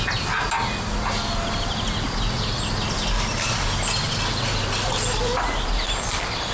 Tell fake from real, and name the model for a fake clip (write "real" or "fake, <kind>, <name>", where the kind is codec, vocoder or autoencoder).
real